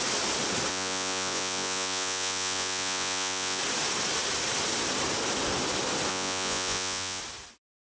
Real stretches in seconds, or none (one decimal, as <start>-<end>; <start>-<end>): 0.0-0.7; 3.6-6.1; 7.2-8.0